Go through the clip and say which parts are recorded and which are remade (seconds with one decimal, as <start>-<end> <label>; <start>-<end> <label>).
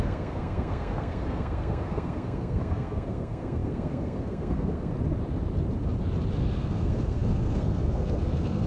0.0-4.9 remade; 4.9-6.4 recorded; 6.4-8.7 remade